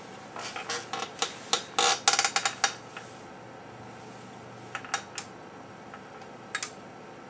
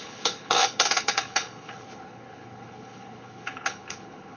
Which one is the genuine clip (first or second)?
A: first